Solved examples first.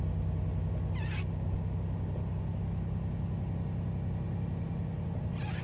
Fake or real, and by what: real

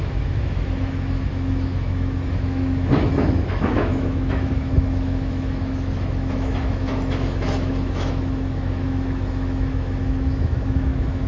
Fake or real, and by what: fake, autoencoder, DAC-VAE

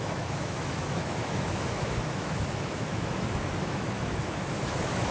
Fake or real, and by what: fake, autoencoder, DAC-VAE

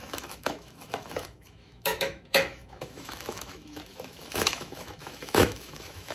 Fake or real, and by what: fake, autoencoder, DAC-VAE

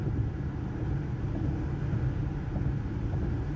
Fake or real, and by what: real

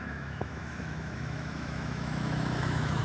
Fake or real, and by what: fake, autoencoder, DAC-VAE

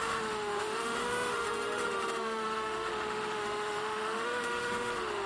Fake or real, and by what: fake, autoencoder, DAC-VAE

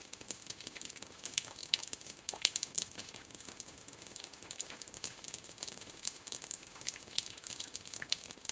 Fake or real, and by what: fake, autoencoder, DAC-VAE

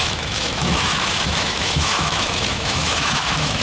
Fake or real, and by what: fake, autoencoder, DAC-VAE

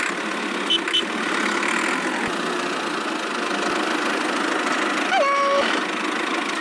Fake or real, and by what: real